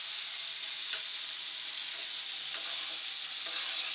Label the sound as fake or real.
real